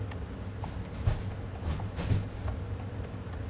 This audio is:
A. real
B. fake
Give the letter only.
A